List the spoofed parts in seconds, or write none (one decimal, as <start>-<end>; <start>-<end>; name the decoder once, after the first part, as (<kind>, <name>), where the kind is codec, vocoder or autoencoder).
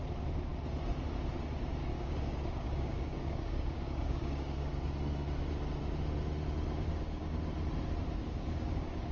1.8-4.7 (codec, DAC); 6.9-7.4; 8.2-9.1